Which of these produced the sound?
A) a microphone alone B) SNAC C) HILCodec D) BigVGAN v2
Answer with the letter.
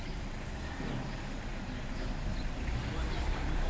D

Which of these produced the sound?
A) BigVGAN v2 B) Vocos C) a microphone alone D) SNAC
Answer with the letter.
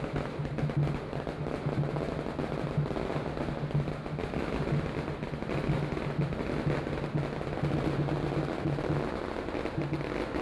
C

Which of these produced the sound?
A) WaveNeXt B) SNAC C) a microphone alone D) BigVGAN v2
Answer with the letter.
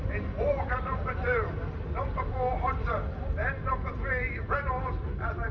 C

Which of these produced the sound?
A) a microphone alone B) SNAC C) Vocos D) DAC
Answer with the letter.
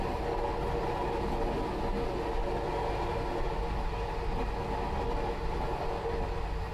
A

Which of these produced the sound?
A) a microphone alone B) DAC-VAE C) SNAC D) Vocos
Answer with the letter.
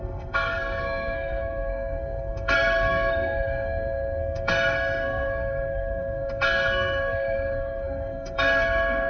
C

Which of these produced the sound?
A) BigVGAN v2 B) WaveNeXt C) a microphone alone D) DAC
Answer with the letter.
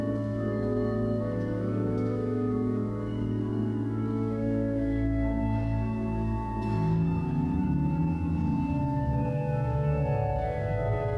D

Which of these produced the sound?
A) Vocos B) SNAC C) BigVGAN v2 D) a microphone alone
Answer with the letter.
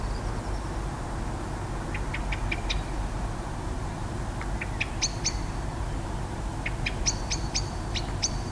D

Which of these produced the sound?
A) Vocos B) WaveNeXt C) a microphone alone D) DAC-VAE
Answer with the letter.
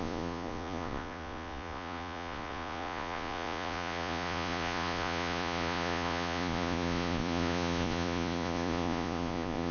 A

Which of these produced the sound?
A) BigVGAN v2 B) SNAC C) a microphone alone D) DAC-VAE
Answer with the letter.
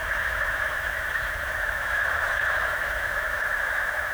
D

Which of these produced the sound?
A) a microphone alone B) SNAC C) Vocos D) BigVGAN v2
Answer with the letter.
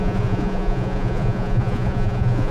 C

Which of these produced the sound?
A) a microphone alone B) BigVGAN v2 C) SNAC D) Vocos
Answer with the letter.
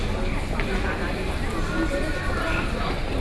A